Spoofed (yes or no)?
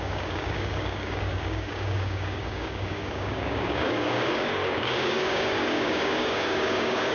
yes